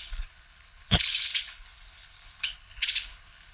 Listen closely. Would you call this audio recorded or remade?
remade